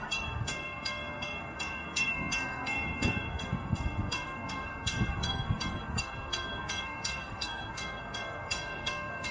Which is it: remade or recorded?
remade